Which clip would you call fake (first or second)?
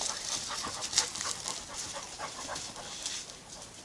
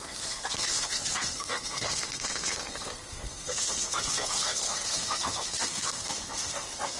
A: second